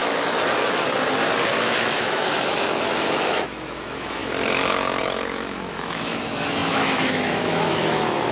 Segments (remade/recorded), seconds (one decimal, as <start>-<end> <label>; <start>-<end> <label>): 0.0-1.5 recorded; 1.5-8.3 remade